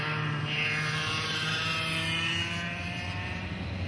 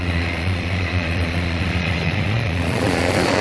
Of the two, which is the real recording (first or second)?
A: first